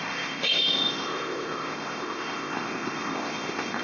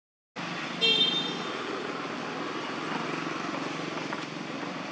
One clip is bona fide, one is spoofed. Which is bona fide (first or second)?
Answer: second